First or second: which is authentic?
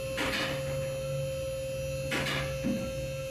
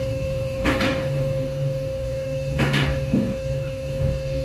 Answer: first